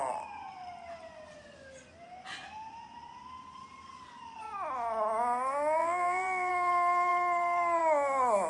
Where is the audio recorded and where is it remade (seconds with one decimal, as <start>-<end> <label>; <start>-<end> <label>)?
0.0-5.8 recorded; 5.8-6.5 remade; 6.5-8.5 recorded